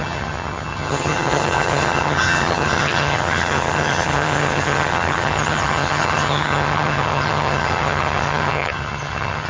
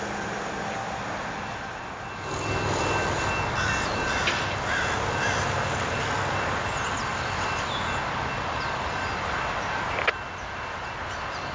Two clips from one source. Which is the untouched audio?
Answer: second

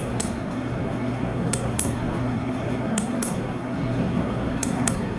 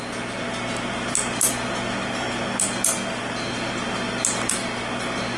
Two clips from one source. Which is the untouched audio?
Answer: second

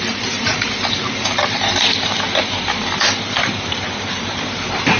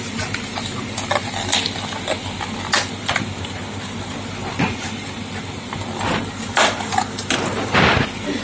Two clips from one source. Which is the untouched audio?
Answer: second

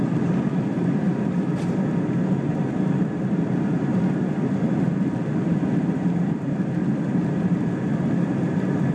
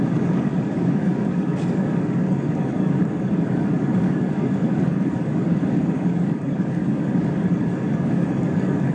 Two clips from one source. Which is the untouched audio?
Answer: first